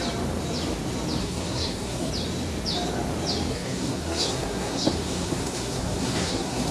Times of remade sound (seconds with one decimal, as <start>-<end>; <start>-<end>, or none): 1.2-2.1; 3.5-6.7